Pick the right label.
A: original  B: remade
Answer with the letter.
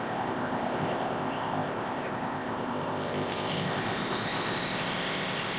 B